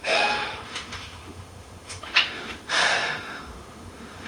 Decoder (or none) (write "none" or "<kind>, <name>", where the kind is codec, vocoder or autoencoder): autoencoder, DAC-VAE